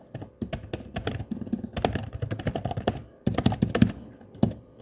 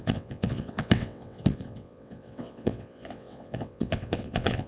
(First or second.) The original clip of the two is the first